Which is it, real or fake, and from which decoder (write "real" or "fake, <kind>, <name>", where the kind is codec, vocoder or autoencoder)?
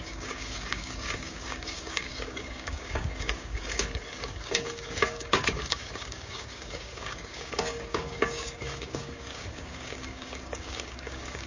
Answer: fake, codec, DAC